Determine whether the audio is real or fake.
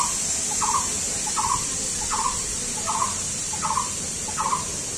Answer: real